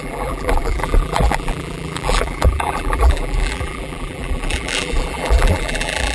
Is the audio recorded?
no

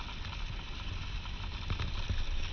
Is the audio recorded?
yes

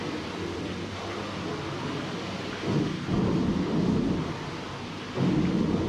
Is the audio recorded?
yes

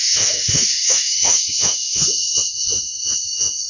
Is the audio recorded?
no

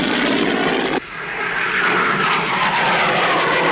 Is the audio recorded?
yes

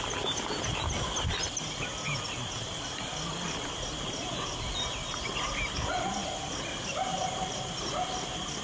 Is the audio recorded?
yes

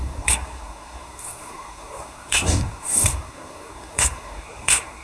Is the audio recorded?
no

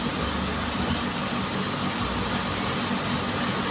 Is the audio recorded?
yes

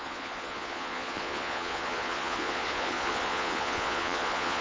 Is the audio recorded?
no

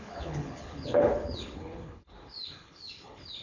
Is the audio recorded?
no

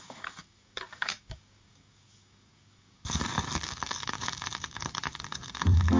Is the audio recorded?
no